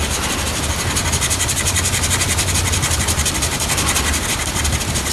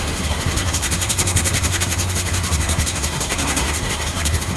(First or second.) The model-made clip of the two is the second